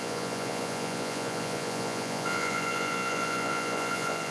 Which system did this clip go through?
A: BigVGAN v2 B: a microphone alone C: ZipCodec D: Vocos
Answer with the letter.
D